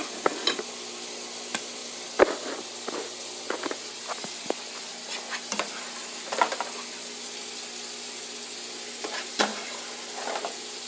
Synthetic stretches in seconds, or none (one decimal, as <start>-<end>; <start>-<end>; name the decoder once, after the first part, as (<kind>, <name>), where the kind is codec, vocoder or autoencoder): none